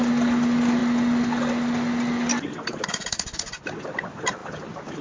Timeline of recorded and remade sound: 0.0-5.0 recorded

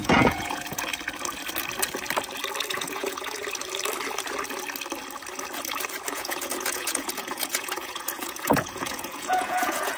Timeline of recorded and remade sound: 0.0-0.9 remade; 0.9-2.7 recorded; 2.7-3.4 remade; 3.4-6.1 recorded; 6.1-10.0 remade

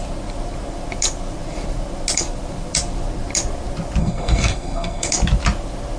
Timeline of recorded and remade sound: 0.0-4.0 recorded; 4.0-5.1 remade; 5.1-6.0 recorded

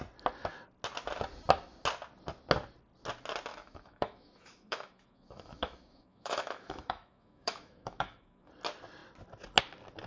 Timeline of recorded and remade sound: 0.0-3.5 recorded; 3.5-8.5 remade; 8.5-10.1 recorded

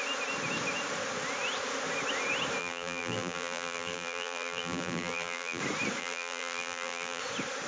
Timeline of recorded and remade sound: 0.0-2.6 recorded; 2.6-5.6 remade; 5.6-6.0 recorded; 6.0-7.2 remade; 7.2-7.7 recorded